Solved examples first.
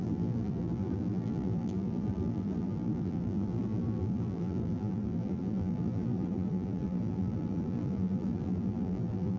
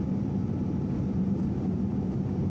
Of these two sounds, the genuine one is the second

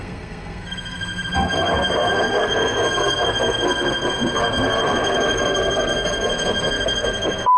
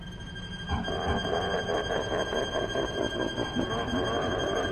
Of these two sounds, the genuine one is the second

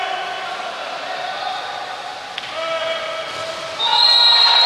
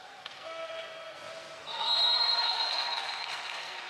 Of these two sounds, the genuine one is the first